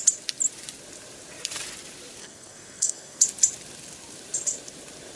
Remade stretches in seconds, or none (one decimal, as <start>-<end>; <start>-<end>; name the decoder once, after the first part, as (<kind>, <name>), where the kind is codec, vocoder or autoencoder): 2.2-3.2 (codec, SNAC)

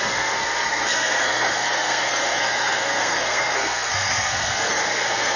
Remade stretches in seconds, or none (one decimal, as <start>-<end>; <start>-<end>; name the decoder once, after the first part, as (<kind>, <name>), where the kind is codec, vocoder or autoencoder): 0.0-5.4 (codec, SNAC)

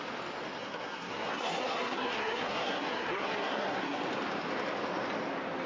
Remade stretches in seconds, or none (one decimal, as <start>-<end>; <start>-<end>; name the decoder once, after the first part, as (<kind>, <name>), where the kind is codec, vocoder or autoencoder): 0.6-4.0 (codec, SNAC)

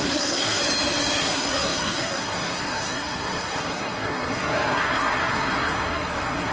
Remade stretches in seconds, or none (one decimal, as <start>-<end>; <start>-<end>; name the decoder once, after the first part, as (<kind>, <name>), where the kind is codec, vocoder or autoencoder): 0.0-0.6 (codec, SNAC); 1.2-6.5

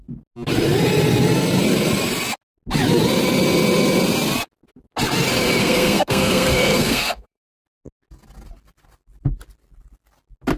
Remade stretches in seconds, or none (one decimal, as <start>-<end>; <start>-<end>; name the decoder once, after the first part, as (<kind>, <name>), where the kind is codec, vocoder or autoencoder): 5.6-7.4 (codec, SNAC)

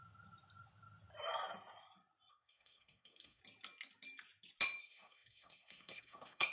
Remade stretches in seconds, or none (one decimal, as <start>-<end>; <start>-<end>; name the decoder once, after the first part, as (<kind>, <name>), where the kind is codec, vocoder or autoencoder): 2.3-3.4 (codec, SNAC); 4.8-6.5

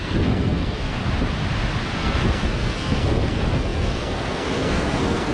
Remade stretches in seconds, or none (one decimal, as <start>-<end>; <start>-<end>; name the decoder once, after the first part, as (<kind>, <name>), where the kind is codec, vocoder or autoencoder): 0.0-1.0 (codec, SNAC); 1.9-5.3